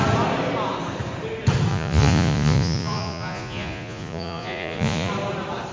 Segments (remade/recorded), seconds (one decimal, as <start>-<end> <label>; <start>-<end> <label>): 0.0-1.7 recorded; 1.7-5.1 remade; 5.1-5.7 recorded